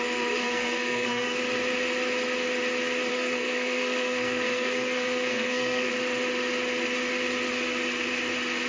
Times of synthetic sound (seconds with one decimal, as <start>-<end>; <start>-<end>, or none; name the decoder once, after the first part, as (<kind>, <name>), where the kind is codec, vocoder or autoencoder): 0.4-1.4 (codec, SNAC); 3.1-5.9